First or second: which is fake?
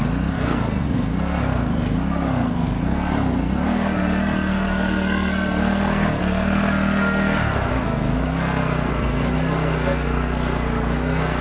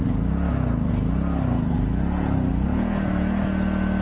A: first